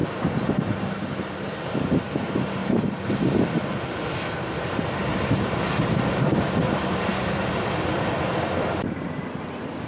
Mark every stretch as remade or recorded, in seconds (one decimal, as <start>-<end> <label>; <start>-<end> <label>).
0.0-0.5 remade; 0.5-2.6 recorded; 2.6-3.2 remade; 3.2-5.1 recorded; 5.1-7.5 remade; 7.5-9.9 recorded

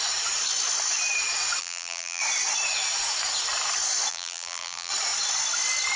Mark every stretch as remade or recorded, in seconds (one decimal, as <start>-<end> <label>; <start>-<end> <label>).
0.0-1.6 recorded; 1.6-2.2 remade; 2.2-4.1 recorded; 4.1-4.9 remade; 4.9-6.0 recorded

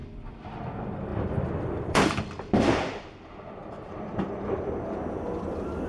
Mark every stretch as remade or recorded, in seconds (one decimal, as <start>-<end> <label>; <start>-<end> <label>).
0.0-0.6 remade; 0.6-1.1 recorded; 1.1-2.0 remade; 2.0-5.9 recorded

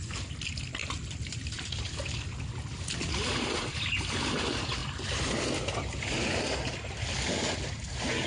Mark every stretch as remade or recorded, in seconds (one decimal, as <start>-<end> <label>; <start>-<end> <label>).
0.0-0.8 recorded; 0.8-3.9 remade; 3.9-8.3 recorded

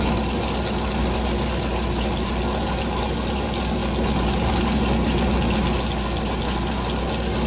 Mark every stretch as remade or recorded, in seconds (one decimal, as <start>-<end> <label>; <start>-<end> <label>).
0.0-7.5 recorded

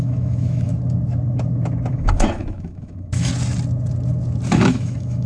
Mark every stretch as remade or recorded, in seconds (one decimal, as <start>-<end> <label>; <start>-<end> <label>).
0.0-0.7 remade; 0.7-1.9 recorded; 1.9-3.3 remade; 3.3-4.5 recorded; 4.5-5.3 remade

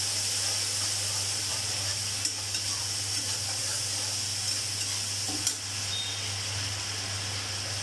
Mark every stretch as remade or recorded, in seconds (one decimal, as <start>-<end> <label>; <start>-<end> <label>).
0.0-7.8 recorded